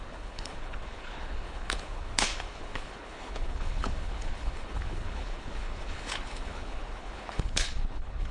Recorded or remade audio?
remade